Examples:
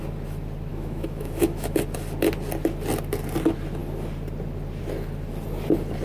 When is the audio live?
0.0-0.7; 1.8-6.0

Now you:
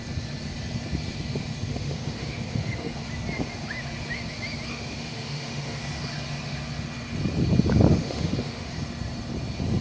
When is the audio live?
0.0-1.7; 3.0-4.7; 5.8-7.9; 8.7-9.8

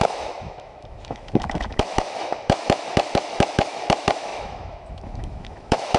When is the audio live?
none